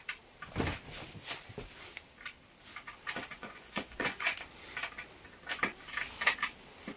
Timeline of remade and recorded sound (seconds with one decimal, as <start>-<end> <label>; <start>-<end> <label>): 0.0-3.3 recorded; 3.3-4.3 remade; 4.3-7.0 recorded

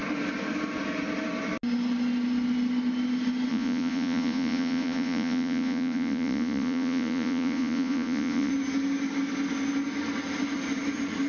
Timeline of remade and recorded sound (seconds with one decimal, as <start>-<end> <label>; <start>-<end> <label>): 0.0-3.5 recorded; 3.5-8.5 remade; 8.5-11.3 recorded

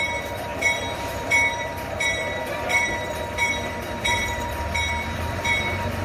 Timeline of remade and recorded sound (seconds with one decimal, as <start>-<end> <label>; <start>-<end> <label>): 0.0-6.0 remade

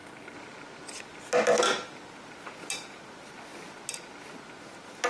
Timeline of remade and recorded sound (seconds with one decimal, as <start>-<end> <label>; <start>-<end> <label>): 0.0-5.1 recorded

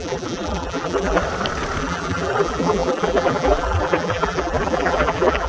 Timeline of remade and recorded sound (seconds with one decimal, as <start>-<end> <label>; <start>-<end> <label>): 0.0-1.2 remade; 1.2-1.8 recorded; 1.8-5.5 remade